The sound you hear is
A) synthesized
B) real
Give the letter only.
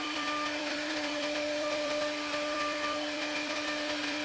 A